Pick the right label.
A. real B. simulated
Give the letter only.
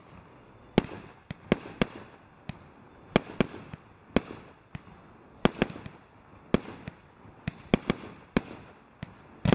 A